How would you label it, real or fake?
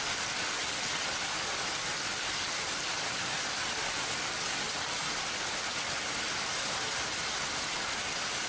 real